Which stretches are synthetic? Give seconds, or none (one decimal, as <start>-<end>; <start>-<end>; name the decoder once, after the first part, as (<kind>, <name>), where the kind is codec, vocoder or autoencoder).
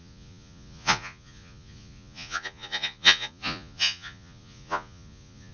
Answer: 0.0-5.5 (vocoder, Vocos)